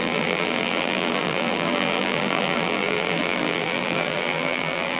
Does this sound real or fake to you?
fake